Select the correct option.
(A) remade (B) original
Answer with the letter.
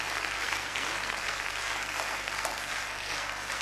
A